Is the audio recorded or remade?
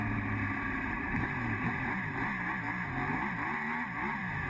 remade